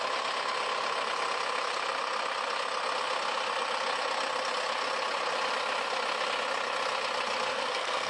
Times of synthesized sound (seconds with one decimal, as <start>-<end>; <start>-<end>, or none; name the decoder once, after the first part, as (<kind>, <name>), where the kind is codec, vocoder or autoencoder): 7.5-8.1 (codec, SNAC)